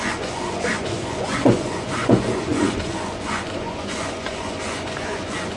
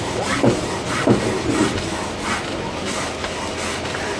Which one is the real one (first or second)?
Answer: second